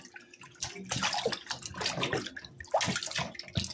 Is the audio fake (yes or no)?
no